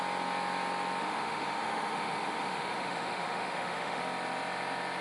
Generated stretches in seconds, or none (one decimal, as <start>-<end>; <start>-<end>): 1.0-4.0